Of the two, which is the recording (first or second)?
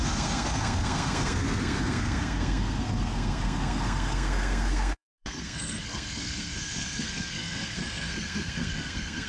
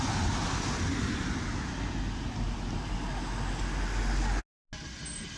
second